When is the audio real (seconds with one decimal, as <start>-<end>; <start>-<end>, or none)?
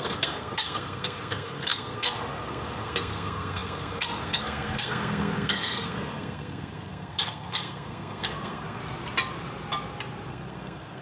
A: 8.8-10.3